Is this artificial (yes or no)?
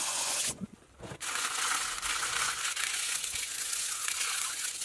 yes